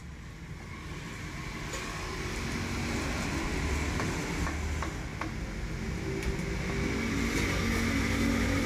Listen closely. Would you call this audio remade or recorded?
recorded